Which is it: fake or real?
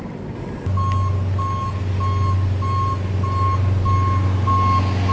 real